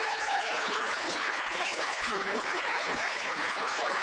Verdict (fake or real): fake